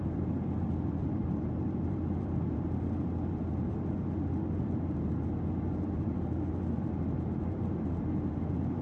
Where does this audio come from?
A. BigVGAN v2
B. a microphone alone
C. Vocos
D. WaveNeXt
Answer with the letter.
A